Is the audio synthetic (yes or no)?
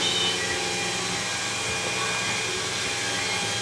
no